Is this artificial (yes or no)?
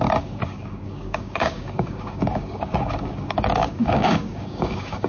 yes